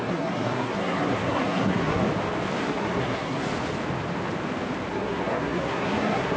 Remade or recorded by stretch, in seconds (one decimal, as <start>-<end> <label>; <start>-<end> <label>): 0.0-2.0 remade; 2.0-2.6 recorded; 2.6-3.5 remade; 3.5-4.9 recorded; 4.9-6.4 remade